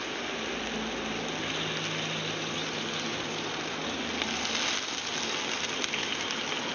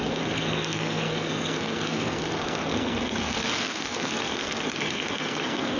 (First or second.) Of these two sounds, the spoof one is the second